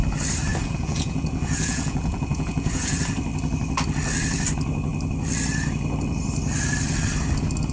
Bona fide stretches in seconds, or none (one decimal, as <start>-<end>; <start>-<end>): 0.0-0.5; 3.0-7.7